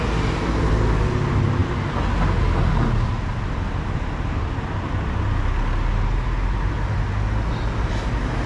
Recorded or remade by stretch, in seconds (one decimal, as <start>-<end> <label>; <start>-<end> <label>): 0.0-8.5 recorded